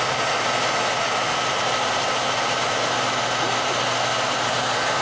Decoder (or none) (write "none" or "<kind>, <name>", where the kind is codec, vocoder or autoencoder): none